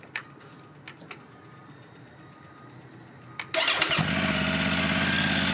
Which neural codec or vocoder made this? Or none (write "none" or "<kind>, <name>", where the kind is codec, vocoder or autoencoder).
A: none